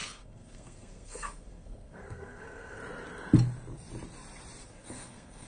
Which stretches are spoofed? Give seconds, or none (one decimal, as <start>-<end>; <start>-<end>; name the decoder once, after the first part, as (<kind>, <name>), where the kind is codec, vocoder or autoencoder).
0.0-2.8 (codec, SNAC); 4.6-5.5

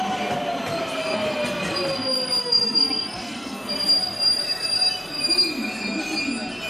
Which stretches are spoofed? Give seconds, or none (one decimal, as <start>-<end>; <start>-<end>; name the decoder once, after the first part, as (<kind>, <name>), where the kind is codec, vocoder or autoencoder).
1.0-1.6 (codec, SNAC); 2.4-3.7

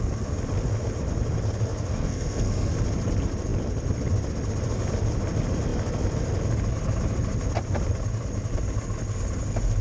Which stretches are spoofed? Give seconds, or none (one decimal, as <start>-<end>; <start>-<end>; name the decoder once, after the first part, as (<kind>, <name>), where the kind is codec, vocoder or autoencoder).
1.9-2.7 (codec, SNAC)

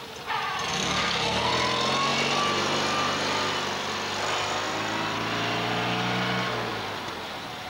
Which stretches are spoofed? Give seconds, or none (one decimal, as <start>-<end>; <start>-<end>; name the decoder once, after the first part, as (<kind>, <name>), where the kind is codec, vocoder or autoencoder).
0.7-1.5 (codec, SNAC)